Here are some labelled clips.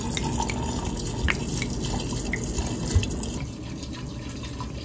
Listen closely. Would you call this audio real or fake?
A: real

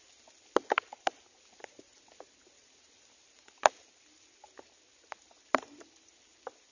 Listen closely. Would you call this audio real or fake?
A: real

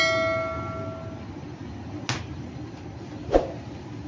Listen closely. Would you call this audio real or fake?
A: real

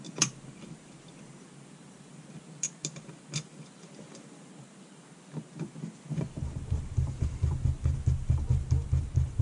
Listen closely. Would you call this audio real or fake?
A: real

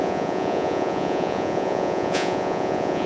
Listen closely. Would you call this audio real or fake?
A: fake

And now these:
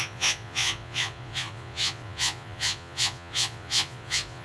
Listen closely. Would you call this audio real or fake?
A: fake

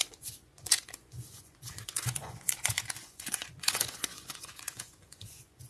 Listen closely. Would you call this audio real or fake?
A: fake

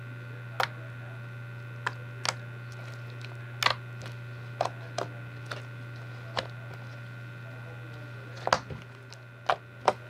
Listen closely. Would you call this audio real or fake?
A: real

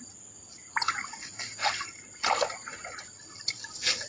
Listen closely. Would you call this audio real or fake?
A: real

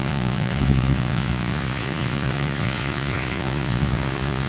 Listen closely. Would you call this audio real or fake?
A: fake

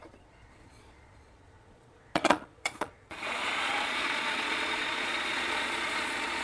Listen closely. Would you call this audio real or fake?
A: fake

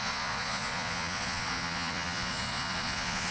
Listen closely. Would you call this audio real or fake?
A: fake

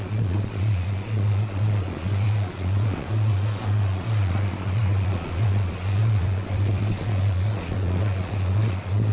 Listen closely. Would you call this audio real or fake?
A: fake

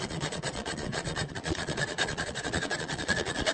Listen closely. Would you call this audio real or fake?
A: fake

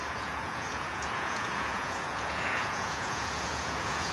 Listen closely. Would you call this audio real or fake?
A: fake